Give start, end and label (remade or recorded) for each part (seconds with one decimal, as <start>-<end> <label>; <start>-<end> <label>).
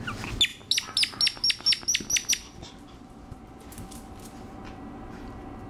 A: 0.0-5.7 recorded